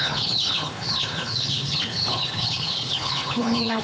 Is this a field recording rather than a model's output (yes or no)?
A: no